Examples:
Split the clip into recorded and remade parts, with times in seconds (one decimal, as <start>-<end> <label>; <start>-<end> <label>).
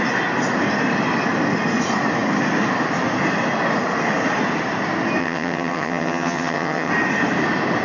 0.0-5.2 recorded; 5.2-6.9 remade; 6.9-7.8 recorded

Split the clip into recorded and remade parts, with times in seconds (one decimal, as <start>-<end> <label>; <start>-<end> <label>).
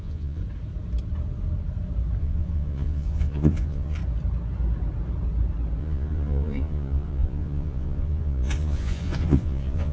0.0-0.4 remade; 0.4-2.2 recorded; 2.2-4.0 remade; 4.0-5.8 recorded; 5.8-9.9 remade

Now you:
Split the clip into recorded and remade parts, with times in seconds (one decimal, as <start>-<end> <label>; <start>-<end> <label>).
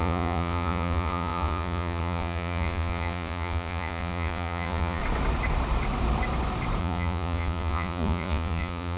0.0-5.0 remade; 5.0-6.8 recorded; 6.8-9.0 remade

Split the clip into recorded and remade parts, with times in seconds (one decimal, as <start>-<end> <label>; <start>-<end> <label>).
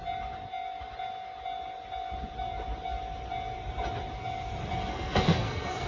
0.0-4.9 recorded; 4.9-5.9 remade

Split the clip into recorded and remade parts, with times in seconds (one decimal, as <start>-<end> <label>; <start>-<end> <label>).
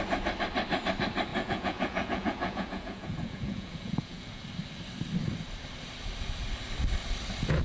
0.0-1.3 recorded; 1.3-4.4 remade; 4.4-7.6 recorded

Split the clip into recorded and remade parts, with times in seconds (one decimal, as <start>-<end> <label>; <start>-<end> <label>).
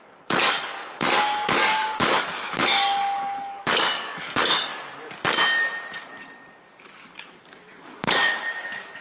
0.0-4.7 remade; 4.7-6.8 recorded; 6.8-9.0 remade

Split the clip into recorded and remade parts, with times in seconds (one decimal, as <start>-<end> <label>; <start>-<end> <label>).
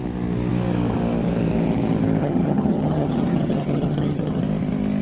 0.0-2.2 recorded; 2.2-4.4 remade; 4.4-5.0 recorded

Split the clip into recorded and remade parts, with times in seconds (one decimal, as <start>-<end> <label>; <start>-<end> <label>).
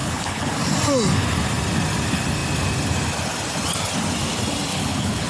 0.0-0.5 remade; 0.5-4.7 recorded; 4.7-5.3 remade